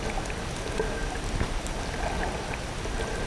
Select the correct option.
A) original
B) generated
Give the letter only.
A